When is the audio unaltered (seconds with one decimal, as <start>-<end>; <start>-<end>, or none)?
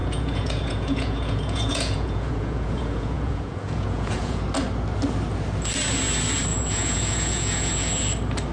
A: 4.4-6.5; 7.7-8.5